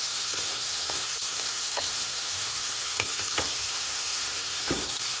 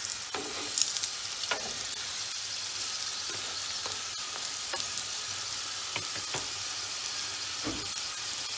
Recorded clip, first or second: second